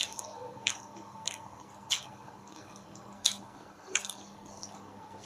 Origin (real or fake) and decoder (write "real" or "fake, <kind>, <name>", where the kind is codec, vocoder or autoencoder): fake, codec, SNAC